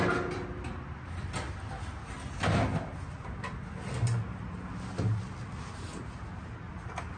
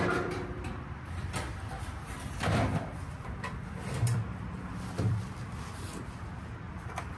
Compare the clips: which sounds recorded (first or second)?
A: first